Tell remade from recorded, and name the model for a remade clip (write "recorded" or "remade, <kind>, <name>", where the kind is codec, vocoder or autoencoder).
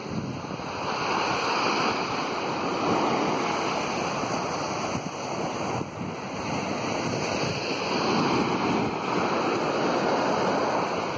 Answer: recorded